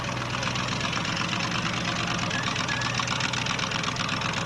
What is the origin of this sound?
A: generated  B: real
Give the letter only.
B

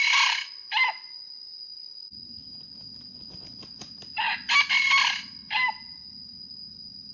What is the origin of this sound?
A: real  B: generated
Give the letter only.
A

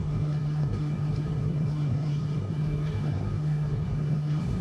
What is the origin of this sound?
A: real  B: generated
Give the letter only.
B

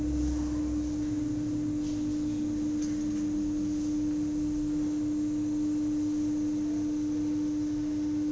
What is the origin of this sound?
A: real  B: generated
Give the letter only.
A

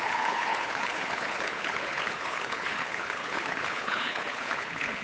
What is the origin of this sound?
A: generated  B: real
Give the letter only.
A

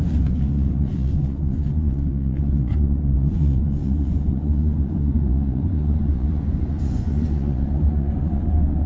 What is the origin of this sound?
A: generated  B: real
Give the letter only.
A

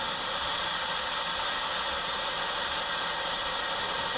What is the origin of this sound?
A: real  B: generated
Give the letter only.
A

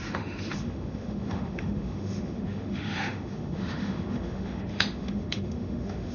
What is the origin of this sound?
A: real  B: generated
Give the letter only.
B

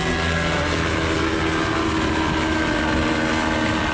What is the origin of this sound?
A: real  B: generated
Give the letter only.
A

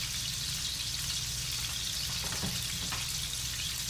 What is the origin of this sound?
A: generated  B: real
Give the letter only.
B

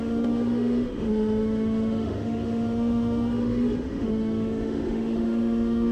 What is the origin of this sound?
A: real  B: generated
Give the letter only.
B